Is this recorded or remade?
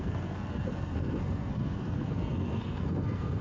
remade